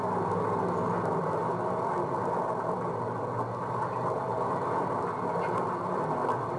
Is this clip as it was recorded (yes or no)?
yes